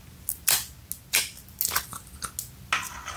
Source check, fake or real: real